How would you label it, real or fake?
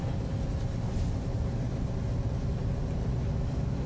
real